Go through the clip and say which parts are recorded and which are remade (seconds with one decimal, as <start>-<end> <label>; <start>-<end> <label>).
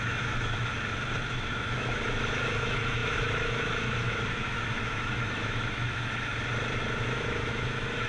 0.0-0.7 remade; 0.7-1.3 recorded; 1.3-6.3 remade; 6.3-7.0 recorded; 7.0-8.1 remade